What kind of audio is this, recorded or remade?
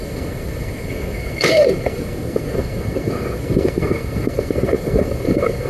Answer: remade